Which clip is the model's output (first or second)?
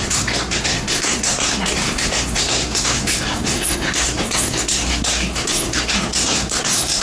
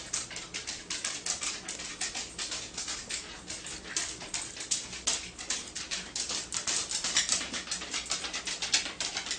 first